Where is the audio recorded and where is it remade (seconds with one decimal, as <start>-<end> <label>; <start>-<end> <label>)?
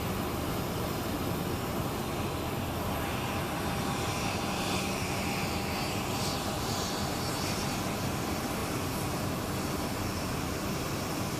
0.0-8.6 recorded; 8.6-9.4 remade; 9.4-11.4 recorded